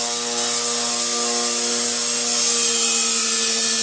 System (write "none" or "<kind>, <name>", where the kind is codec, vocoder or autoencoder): none